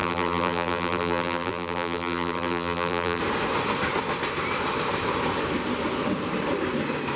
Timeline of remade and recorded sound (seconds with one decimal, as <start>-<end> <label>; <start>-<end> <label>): 0.0-3.2 remade; 3.2-7.2 recorded